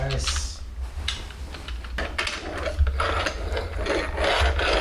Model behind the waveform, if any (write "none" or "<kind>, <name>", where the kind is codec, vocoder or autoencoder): none